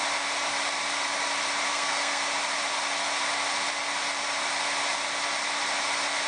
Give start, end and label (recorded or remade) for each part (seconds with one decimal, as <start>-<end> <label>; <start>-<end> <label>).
0.0-1.7 recorded; 1.7-2.2 remade; 2.2-6.3 recorded